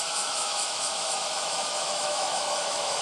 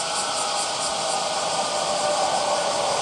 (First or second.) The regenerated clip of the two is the first